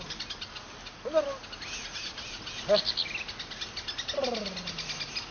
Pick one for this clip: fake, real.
real